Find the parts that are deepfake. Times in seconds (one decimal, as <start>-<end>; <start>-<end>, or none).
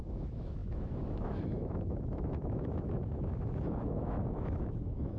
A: 0.0-5.2